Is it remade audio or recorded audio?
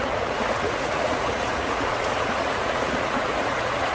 remade